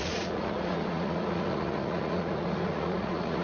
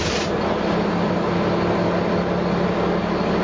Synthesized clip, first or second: first